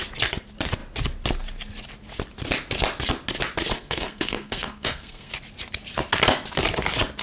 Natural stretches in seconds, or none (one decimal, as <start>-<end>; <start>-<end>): 0.0-3.7; 5.3-7.2